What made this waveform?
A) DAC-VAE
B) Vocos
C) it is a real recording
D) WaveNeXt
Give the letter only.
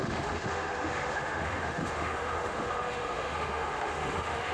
A